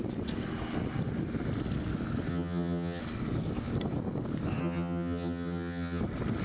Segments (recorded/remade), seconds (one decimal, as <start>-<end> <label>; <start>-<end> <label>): 0.0-2.3 recorded; 2.3-3.0 remade; 3.0-4.6 recorded; 4.6-6.0 remade; 6.0-6.4 recorded